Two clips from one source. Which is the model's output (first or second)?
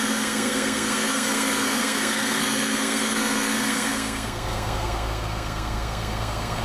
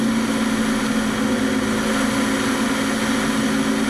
first